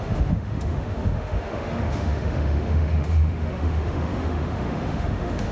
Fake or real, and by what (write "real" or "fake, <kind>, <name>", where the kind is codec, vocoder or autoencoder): fake, autoencoder, DAC-VAE